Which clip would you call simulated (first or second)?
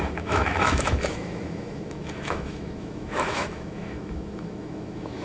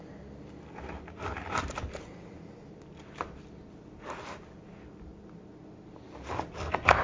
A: first